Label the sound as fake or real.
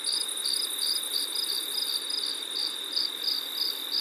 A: real